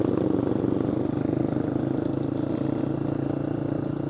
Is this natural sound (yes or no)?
yes